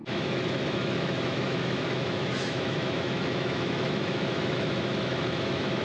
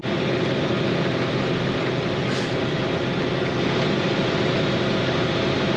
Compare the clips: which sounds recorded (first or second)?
second